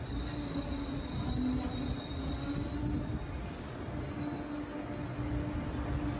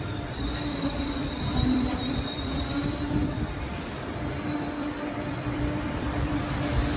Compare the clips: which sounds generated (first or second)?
second